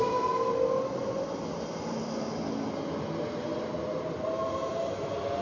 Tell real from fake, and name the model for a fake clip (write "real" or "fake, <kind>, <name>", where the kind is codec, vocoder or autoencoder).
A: real